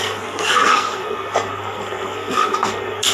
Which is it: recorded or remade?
remade